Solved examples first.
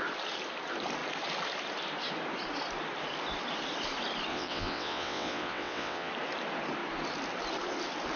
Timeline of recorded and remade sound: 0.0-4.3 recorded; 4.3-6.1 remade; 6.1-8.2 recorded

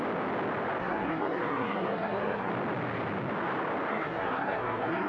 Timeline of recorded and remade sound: 0.0-0.8 recorded; 0.8-2.5 remade; 2.5-3.9 recorded; 3.9-5.1 remade

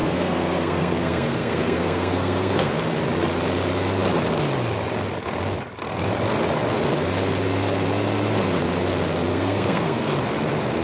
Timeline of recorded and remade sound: 0.0-2.7 remade; 2.7-9.3 recorded; 9.3-10.1 remade; 10.1-10.8 recorded

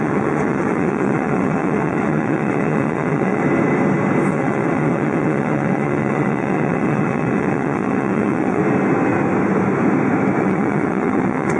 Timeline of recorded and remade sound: 0.0-3.4 remade; 3.4-4.3 recorded; 4.3-8.6 remade; 8.6-10.4 recorded; 10.4-11.6 remade

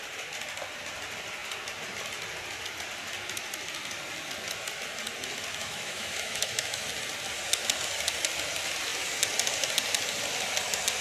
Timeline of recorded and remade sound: 0.0-5.6 recorded; 5.6-6.9 remade; 6.9-11.0 recorded

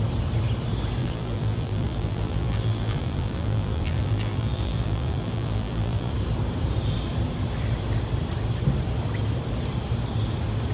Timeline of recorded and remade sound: 0.0-1.0 recorded; 1.0-6.1 remade; 6.1-10.7 recorded

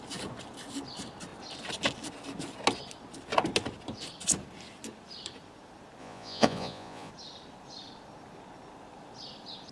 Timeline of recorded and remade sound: 0.0-6.0 recorded; 6.0-7.1 remade; 7.1-9.7 recorded